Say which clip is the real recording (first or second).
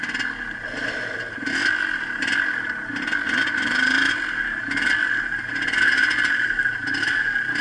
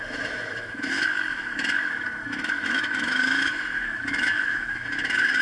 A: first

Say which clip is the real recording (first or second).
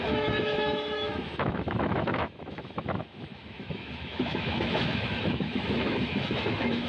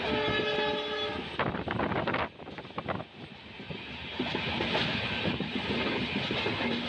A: second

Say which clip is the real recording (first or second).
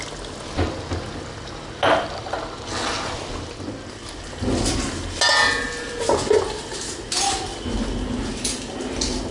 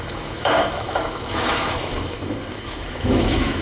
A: first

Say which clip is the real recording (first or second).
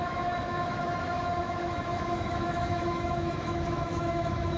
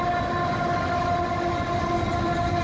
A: second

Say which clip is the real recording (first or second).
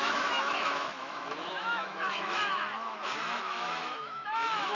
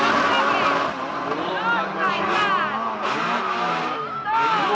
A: second